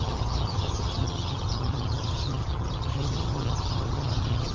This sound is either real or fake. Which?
fake